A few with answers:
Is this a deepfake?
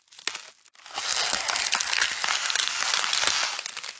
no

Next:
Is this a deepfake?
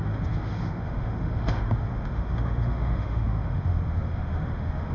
yes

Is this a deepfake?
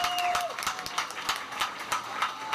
no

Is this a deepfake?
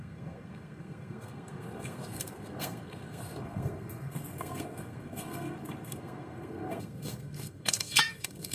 yes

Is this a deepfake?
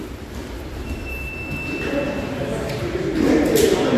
no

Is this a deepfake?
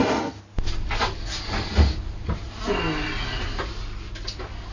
no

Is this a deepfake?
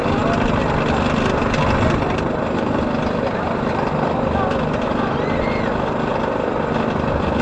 no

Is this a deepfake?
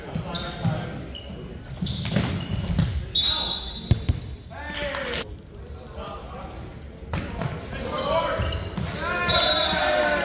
no